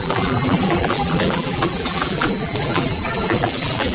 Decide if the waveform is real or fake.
fake